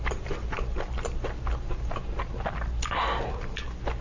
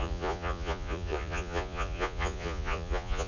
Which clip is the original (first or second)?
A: first